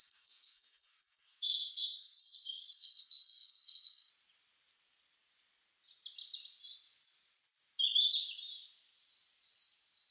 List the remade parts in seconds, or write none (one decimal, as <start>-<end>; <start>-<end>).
0.0-4.1